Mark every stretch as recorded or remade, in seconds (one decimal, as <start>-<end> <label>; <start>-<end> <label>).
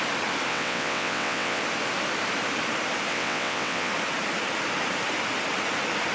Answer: 0.0-0.5 recorded; 0.5-1.6 remade; 1.6-3.1 recorded; 3.1-3.9 remade; 3.9-6.1 recorded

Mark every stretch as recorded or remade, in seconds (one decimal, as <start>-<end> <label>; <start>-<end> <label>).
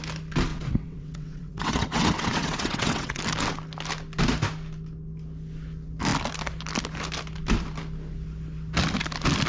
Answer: 0.0-0.5 recorded; 0.5-3.2 remade; 3.2-9.5 recorded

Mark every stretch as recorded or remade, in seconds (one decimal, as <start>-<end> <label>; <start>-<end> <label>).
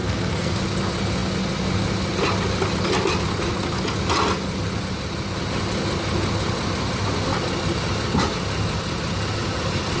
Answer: 0.0-0.6 remade; 0.6-10.0 recorded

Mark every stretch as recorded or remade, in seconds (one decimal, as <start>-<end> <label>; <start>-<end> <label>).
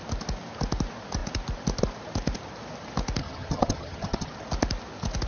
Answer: 0.0-3.2 recorded; 3.2-4.3 remade; 4.3-5.3 recorded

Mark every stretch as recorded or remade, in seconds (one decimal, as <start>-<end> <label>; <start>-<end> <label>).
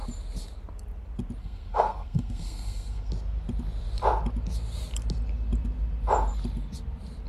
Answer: 0.0-1.4 recorded; 1.4-3.1 remade; 3.1-7.3 recorded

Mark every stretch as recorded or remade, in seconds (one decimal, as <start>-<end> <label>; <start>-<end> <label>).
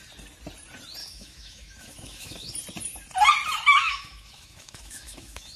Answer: 0.0-1.0 recorded; 1.0-2.5 remade; 2.5-3.8 recorded; 3.8-5.6 remade